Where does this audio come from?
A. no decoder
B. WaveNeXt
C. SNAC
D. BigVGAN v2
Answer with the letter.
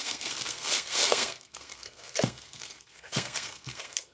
C